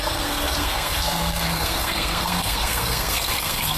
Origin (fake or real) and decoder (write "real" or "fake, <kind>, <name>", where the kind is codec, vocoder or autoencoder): fake, codec, SNAC